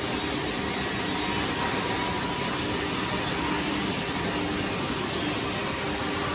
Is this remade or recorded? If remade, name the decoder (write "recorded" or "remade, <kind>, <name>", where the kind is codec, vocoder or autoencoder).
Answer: recorded